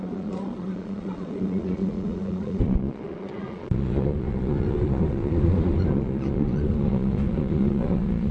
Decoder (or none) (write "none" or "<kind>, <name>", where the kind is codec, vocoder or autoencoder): vocoder, Vocos